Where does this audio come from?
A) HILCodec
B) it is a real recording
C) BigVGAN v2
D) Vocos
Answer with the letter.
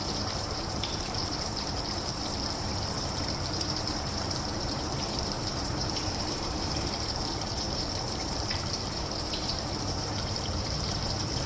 C